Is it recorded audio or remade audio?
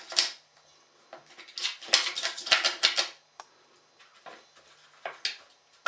recorded